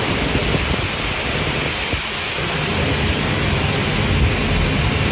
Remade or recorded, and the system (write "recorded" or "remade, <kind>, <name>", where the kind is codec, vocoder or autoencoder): recorded